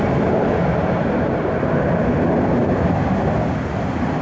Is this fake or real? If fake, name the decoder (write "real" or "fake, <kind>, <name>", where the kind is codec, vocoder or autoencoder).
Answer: real